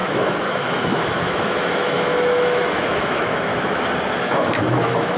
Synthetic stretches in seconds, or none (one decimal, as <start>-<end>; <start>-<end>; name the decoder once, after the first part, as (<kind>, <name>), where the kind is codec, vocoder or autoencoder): 0.0-3.5 (autoencoder, DAC-VAE); 4.2-5.2